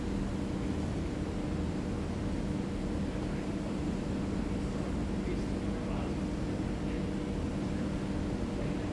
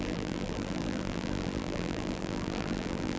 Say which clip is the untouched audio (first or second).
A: first